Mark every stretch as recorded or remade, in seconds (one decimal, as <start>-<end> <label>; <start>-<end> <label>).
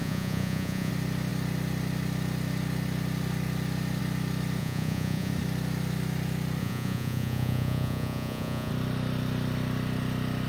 0.0-0.9 remade; 0.9-4.6 recorded; 4.6-5.3 remade; 5.3-6.6 recorded; 6.6-8.7 remade; 8.7-10.5 recorded